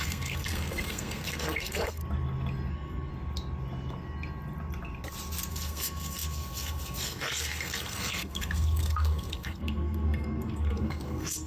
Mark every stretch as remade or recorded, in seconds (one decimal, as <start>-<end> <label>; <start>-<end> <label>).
0.0-2.0 remade; 2.0-2.7 recorded; 2.7-3.1 remade; 3.1-5.5 recorded; 5.5-11.5 remade